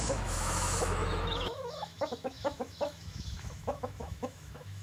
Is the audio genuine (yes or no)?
no